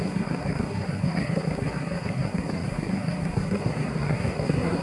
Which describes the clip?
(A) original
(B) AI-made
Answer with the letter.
B